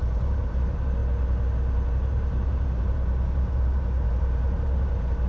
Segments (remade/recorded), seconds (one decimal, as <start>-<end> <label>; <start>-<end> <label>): 0.0-1.0 remade; 1.0-1.9 recorded; 1.9-5.3 remade